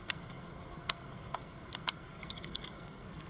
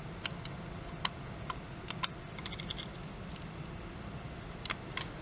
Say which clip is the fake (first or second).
first